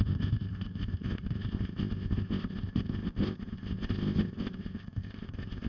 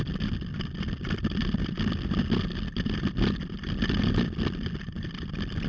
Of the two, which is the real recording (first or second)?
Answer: second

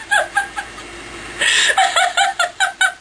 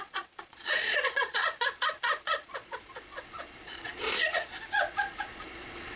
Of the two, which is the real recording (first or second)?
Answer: first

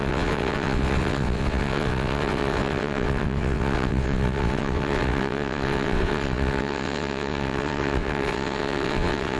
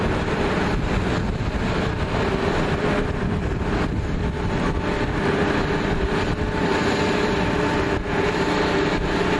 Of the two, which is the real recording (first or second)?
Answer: second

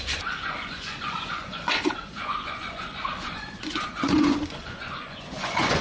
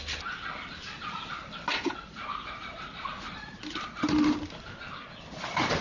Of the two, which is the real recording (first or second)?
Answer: second